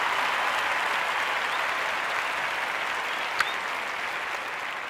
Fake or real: real